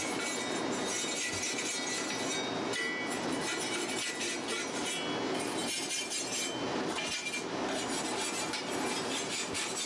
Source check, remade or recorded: recorded